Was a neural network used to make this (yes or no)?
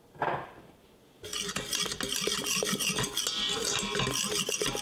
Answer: no